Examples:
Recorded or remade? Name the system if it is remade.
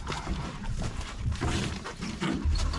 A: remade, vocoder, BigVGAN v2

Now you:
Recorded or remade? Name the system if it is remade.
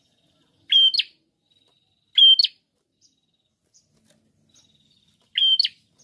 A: recorded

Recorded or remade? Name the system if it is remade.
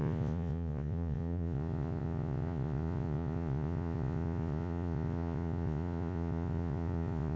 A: remade, vocoder, Vocos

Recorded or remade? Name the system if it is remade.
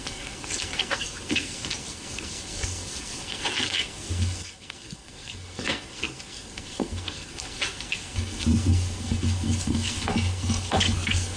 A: remade, codec, SNAC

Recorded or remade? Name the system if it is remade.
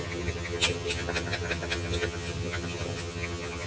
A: remade, vocoder, HiFi-GAN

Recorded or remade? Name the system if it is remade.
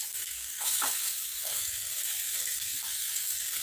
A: remade, codec, SNAC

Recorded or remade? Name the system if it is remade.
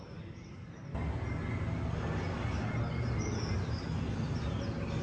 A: recorded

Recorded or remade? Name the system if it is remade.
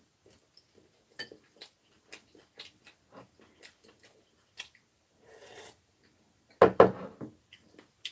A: recorded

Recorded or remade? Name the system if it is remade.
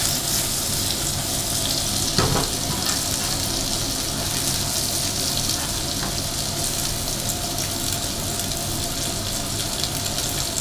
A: recorded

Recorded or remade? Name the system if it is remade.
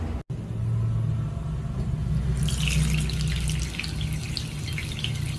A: recorded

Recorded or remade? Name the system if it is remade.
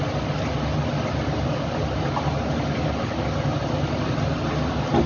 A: recorded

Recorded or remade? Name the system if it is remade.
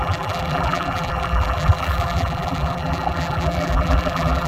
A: remade, vocoder, BigVGAN v2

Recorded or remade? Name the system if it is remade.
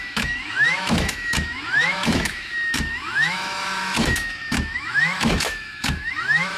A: remade, autoencoder, DAC-VAE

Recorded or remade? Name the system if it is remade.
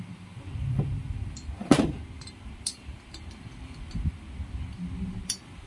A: remade, vocoder, BigVGAN v2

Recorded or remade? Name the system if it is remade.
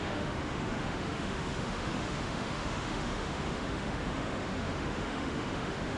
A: remade, autoencoder, DAC-VAE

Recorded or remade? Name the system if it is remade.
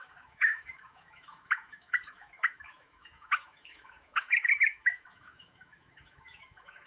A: remade, autoencoder, DAC-VAE